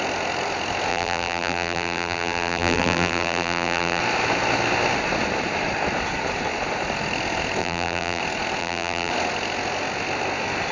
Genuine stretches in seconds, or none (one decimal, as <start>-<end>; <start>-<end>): 0.0-0.9; 4.0-7.6; 8.2-8.6; 9.1-10.7